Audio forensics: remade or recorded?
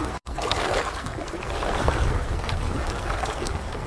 remade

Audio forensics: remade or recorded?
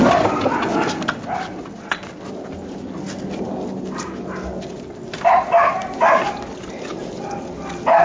recorded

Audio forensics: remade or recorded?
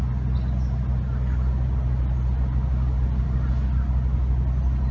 recorded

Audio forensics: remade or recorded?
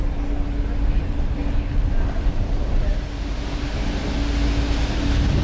recorded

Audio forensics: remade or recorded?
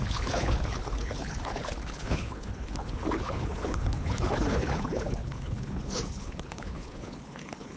remade